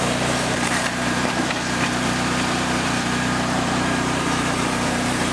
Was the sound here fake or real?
fake